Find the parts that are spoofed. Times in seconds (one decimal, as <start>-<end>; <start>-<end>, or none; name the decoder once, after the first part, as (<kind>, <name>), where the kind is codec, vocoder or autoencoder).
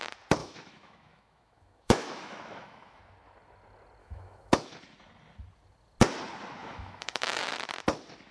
0.4-3.0 (autoencoder, DAC-VAE); 4.0-4.7; 6.6-7.4